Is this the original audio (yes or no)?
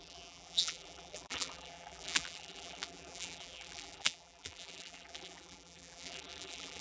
no